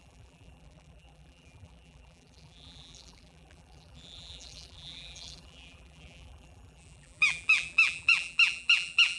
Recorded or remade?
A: remade